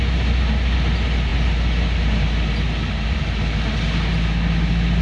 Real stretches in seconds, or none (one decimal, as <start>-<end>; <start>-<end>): 0.0-5.0